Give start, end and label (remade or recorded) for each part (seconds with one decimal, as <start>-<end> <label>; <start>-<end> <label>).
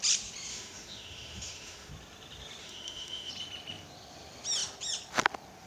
0.0-0.5 recorded; 0.5-1.9 remade; 1.9-2.6 recorded; 2.6-3.3 remade; 3.3-5.7 recorded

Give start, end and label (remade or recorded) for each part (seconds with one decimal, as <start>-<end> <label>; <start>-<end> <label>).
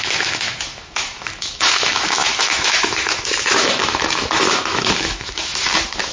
0.0-6.1 remade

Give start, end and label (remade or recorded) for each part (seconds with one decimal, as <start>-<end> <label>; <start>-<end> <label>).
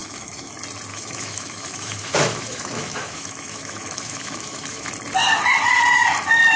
0.0-0.5 remade; 0.5-0.9 recorded; 0.9-4.9 remade; 4.9-6.6 recorded